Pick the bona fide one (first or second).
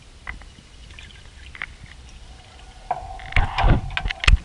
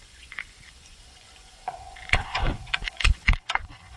first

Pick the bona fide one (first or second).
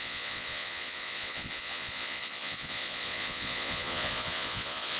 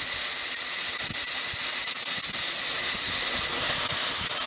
second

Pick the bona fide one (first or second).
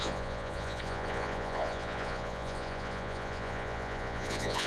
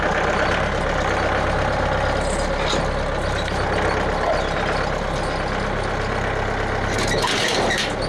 second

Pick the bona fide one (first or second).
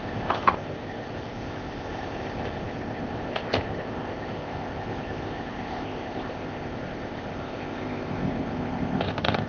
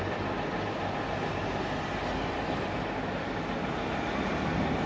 second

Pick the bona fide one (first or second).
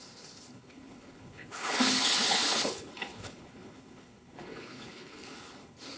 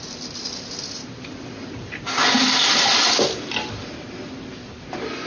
second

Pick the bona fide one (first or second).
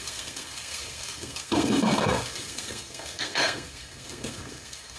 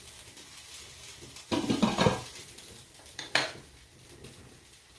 second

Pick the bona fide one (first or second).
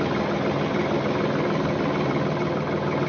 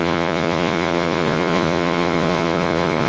first